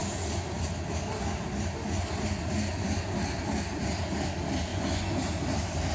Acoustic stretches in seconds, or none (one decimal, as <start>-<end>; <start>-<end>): 0.0-4.7; 5.2-5.9